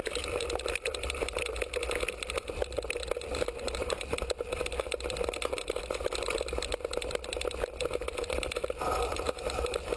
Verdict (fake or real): fake